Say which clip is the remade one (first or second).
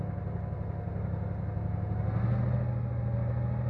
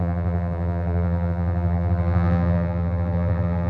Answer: second